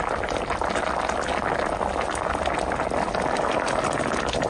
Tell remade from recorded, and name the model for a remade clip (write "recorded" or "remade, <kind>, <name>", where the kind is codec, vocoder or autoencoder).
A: recorded